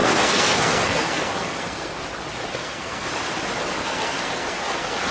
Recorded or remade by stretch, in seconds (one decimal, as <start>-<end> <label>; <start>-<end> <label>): 0.0-2.0 remade; 2.0-2.5 recorded; 2.5-3.2 remade; 3.2-3.8 recorded; 3.8-5.1 remade

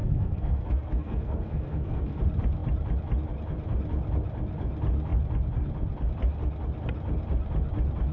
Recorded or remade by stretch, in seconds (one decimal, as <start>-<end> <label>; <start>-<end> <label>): 0.0-2.2 remade; 2.2-8.1 recorded

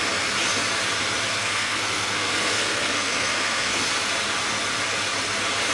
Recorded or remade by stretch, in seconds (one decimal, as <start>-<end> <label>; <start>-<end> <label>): 0.0-1.3 recorded; 1.3-3.8 remade; 3.8-5.7 recorded